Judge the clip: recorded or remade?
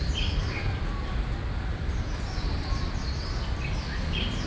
remade